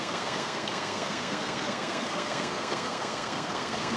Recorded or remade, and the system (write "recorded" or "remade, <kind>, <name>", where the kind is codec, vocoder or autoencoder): remade, codec, SNAC